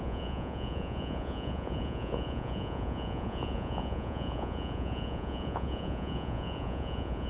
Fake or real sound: fake